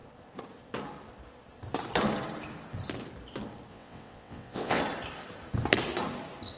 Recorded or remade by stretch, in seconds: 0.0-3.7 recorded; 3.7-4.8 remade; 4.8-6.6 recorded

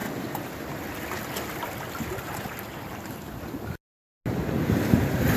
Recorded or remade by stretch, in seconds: 0.0-5.4 recorded

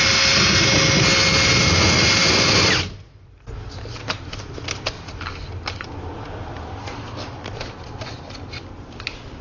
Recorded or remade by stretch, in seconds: 0.0-9.4 recorded

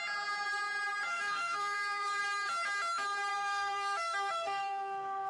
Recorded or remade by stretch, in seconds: 0.0-1.1 recorded; 1.1-2.2 remade; 2.2-3.3 recorded; 3.3-5.3 remade